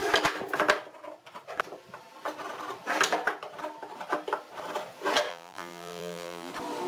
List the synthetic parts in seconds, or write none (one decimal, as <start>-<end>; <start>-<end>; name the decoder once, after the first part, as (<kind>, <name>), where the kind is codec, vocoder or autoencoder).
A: 5.3-6.5 (vocoder, BigVGAN v2)